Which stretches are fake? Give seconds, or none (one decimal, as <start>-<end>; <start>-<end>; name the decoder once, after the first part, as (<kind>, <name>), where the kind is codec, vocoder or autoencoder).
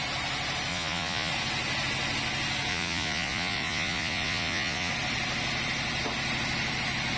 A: 0.7-1.3 (vocoder, Vocos); 2.7-4.9